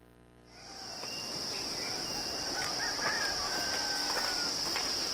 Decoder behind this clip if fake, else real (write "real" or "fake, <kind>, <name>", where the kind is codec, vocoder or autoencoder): real